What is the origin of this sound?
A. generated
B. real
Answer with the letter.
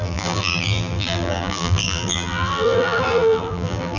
A